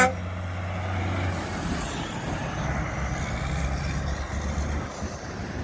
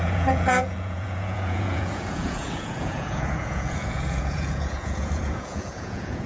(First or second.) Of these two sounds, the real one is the first